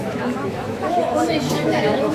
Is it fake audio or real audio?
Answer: fake